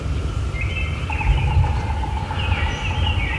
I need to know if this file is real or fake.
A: real